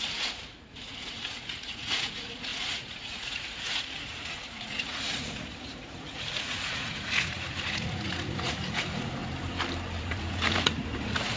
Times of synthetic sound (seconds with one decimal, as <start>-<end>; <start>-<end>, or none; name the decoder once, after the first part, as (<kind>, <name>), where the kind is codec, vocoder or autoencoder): 0.0-9.2 (vocoder, Vocos); 10.0-11.4